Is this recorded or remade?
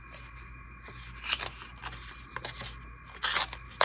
recorded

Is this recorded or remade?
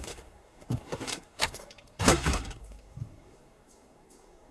remade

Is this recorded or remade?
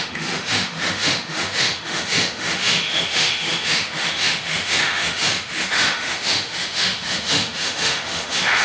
remade